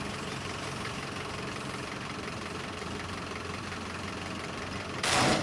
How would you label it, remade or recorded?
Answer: remade